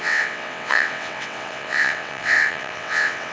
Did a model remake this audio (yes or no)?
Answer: yes